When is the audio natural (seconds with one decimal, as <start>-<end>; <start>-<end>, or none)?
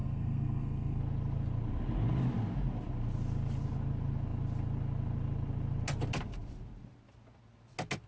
1.0-8.1